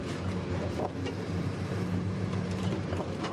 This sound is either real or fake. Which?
fake